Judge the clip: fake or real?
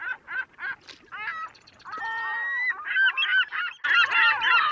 real